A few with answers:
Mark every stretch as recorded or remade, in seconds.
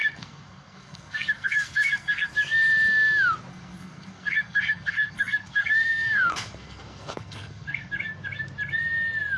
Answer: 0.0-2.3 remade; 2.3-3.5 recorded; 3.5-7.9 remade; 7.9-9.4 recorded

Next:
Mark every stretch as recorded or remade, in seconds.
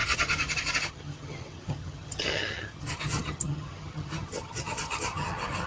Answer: 0.0-5.7 remade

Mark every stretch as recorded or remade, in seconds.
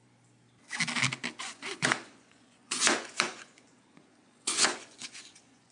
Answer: 0.0-1.4 recorded; 1.4-5.7 remade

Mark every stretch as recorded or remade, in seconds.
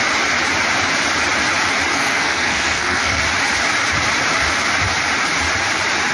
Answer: 0.0-1.9 recorded; 1.9-3.2 remade; 3.2-6.1 recorded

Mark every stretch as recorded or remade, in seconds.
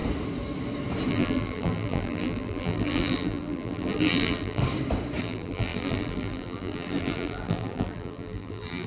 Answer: 0.0-1.1 recorded; 1.1-4.6 remade; 4.6-5.2 recorded; 5.2-8.9 remade